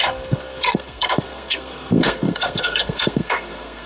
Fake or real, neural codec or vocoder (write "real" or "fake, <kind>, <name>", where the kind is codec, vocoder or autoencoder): fake, codec, SNAC